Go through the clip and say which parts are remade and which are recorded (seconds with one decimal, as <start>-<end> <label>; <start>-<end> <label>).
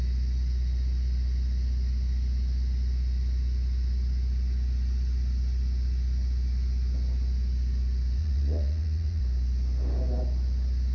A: 0.0-8.2 recorded; 8.2-9.2 remade; 9.2-10.9 recorded